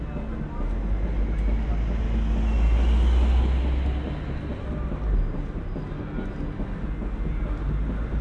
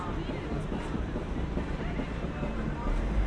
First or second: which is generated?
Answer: second